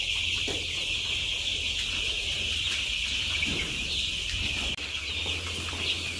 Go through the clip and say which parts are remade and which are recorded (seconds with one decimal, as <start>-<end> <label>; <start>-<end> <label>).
0.0-1.3 recorded; 1.3-5.0 remade; 5.0-6.2 recorded